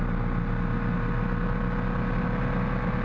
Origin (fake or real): real